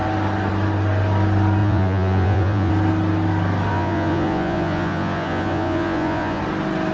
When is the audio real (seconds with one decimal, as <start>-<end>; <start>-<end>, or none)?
0.0-1.6; 2.7-3.7; 6.4-6.9